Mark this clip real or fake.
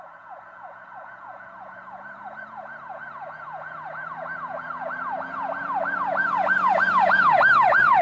fake